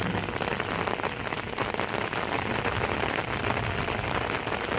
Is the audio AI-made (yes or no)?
no